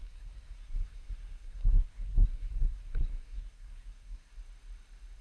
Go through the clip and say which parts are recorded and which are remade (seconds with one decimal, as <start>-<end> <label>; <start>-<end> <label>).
0.0-4.3 remade; 4.3-5.2 recorded